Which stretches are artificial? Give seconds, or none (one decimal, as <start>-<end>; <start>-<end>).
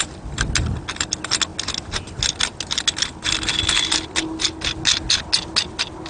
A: none